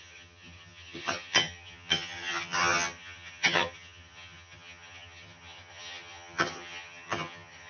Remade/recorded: remade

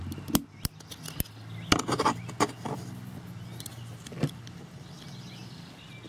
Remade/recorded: recorded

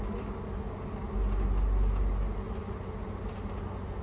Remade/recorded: recorded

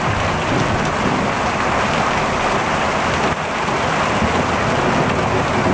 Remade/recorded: recorded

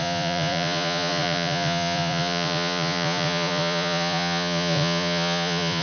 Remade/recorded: remade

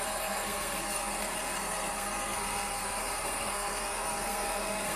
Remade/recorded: remade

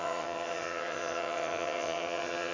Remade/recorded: remade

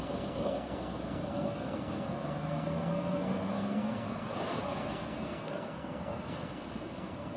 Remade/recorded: remade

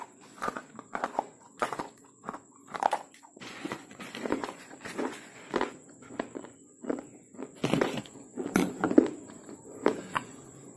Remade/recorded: remade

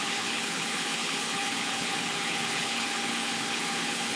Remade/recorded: remade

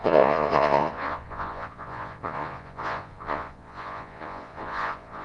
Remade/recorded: remade